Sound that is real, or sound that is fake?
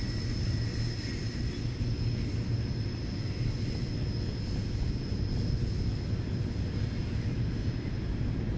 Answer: real